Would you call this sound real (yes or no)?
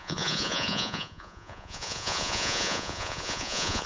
no